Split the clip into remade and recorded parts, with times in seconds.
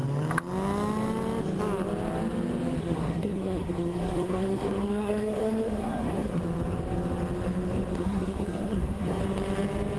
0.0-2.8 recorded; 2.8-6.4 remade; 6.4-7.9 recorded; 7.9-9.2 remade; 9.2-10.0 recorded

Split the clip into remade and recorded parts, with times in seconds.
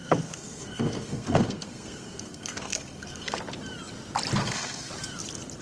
0.0-3.4 remade; 3.4-4.4 recorded; 4.4-4.9 remade; 4.9-5.6 recorded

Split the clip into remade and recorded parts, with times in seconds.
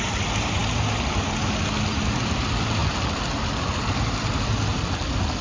0.0-5.4 recorded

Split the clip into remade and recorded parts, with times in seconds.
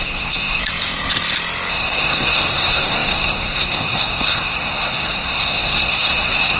0.0-0.6 remade; 0.6-1.7 recorded; 1.7-6.6 remade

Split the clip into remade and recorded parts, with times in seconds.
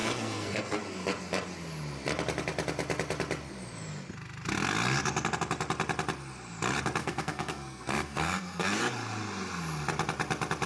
0.0-0.8 remade; 0.8-7.0 recorded; 7.0-8.8 remade; 8.8-10.7 recorded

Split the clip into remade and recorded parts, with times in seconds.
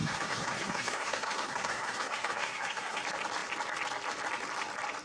0.0-3.0 remade; 3.0-5.0 recorded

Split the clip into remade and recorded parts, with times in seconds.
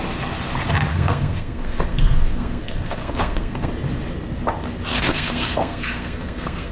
0.0-0.9 recorded; 0.9-3.7 remade; 3.7-4.9 recorded; 4.9-6.7 remade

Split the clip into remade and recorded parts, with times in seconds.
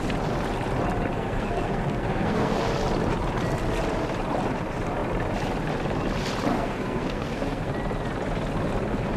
0.0-1.1 recorded; 1.1-2.6 remade; 2.6-6.5 recorded; 6.5-7.7 remade; 7.7-9.2 recorded